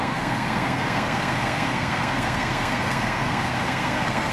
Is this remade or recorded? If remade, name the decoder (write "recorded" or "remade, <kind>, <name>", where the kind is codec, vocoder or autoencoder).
remade, codec, SNAC